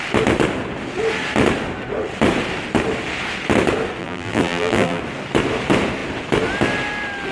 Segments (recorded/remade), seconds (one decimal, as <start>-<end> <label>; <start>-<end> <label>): 0.0-4.0 recorded; 4.0-5.0 remade; 5.0-7.3 recorded

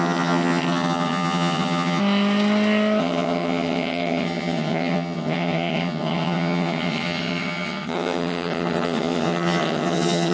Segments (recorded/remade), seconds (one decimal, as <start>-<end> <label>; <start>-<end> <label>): 0.0-2.0 remade; 2.0-3.0 recorded; 3.0-10.3 remade

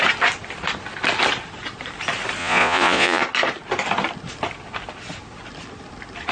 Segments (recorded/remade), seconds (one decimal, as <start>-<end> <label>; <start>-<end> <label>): 0.0-2.4 recorded; 2.4-3.2 remade; 3.2-6.3 recorded

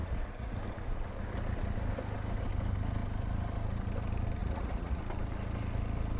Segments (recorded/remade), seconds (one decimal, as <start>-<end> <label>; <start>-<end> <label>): 0.0-0.6 remade; 0.6-4.4 recorded; 4.4-5.0 remade; 5.0-6.2 recorded

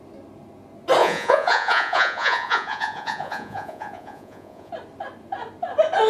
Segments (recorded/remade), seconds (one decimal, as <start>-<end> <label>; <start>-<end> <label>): 0.0-1.0 recorded; 1.0-4.7 remade; 4.7-6.1 recorded